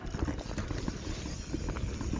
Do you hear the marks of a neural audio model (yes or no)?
no